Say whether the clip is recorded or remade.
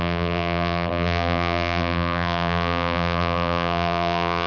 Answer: remade